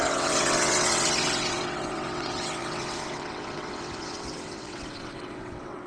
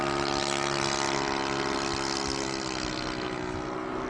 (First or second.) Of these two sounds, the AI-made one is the first